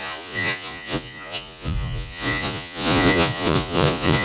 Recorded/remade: remade